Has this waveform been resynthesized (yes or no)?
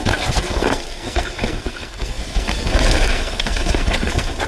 yes